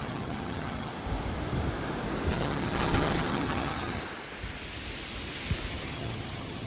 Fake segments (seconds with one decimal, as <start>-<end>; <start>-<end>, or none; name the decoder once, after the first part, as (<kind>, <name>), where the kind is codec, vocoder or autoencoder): 0.0-0.9 (vocoder, HiFi-GAN); 2.3-4.0; 5.7-6.7